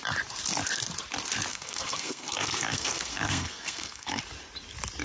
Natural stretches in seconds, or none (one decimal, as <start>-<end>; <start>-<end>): 0.0-1.5; 4.2-5.0